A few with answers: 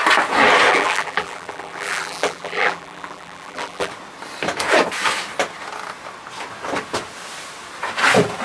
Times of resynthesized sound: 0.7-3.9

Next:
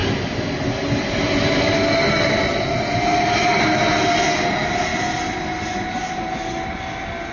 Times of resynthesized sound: none